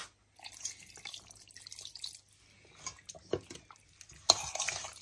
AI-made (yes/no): no